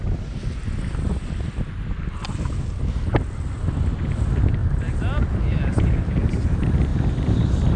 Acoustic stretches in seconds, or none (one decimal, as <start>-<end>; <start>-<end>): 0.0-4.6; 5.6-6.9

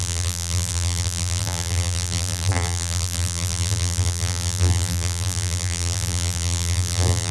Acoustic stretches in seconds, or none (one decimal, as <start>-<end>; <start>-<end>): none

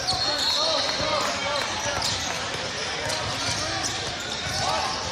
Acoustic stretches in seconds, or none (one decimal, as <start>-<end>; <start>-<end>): 0.0-5.1